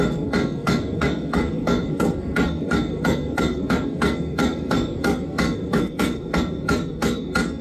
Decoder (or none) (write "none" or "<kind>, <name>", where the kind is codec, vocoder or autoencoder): codec, SNAC